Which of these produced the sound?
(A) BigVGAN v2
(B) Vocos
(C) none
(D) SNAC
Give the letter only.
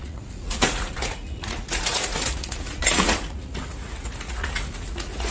B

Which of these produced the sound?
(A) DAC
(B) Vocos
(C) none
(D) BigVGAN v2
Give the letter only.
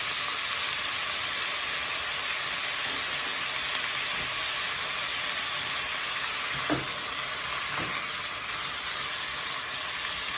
C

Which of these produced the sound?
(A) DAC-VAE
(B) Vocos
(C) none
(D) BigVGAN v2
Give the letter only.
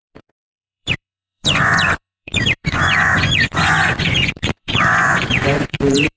B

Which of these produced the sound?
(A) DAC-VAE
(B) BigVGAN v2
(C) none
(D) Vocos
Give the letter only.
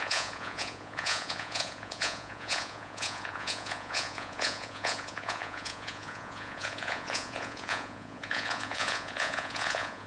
D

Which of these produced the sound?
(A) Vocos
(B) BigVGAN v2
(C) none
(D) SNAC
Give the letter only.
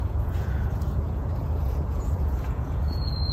A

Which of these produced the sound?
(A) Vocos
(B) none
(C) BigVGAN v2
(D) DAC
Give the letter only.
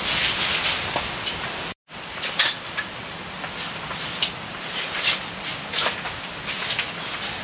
B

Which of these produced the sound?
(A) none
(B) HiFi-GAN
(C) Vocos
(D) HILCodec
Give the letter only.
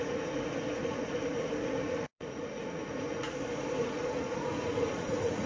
C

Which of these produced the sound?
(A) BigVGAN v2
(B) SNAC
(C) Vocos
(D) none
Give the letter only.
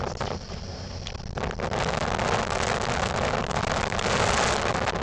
D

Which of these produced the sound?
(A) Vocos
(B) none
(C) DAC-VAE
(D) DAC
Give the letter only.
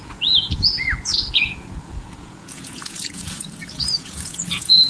A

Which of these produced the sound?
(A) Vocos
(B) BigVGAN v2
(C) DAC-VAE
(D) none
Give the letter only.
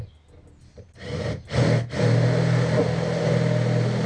D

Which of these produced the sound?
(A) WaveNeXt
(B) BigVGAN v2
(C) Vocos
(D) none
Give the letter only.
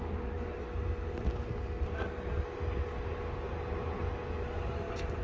D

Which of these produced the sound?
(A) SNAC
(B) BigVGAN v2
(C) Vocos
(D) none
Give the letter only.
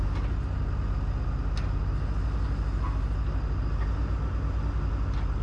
D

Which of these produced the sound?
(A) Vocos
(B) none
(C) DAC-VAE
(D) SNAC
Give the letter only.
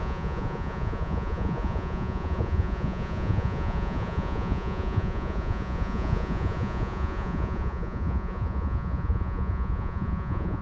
A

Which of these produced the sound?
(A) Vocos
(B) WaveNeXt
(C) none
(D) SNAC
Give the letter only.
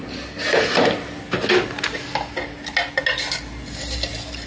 C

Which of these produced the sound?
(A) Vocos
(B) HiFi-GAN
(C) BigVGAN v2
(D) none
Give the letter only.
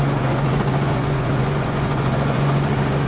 A